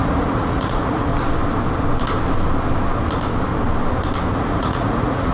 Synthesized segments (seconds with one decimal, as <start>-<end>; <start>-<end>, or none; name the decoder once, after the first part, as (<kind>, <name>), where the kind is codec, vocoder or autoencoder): 0.0-1.1 (vocoder, Vocos); 4.3-5.3